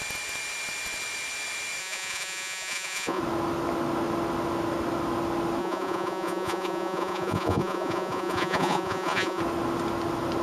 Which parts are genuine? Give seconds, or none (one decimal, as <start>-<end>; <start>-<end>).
0.0-1.8; 3.2-5.6; 9.4-10.4